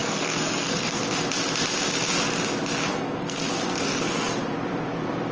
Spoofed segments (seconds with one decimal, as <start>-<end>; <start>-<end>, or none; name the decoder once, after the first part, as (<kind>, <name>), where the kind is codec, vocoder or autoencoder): 0.0-1.0 (codec, SNAC); 2.9-4.4